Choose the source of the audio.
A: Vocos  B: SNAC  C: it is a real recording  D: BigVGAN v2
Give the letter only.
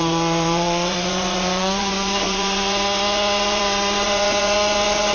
A